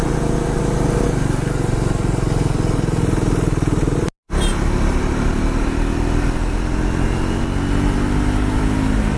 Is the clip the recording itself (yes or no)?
yes